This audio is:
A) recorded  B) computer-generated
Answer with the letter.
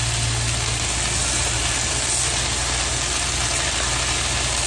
A